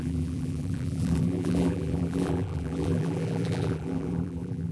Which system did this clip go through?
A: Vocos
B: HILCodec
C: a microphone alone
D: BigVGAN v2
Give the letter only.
D